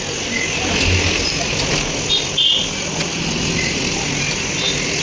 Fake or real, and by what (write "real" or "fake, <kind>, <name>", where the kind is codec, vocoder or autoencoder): real